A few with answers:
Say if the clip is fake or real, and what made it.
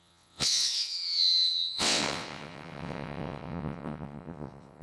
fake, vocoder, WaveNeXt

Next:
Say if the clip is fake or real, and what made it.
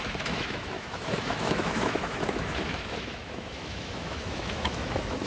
fake, autoencoder, DAC-VAE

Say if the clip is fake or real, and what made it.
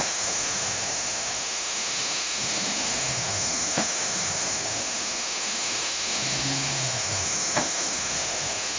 fake, autoencoder, DAC-VAE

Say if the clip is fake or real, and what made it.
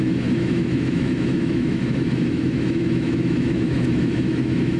fake, autoencoder, DAC-VAE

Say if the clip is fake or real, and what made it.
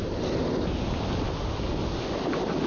real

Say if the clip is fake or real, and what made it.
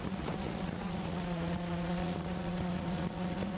fake, vocoder, Vocos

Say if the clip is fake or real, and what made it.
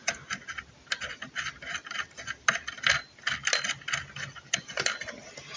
real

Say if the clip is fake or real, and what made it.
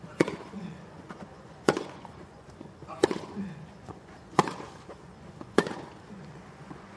fake, vocoder, Vocos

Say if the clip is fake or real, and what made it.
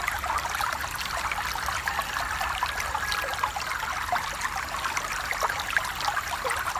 real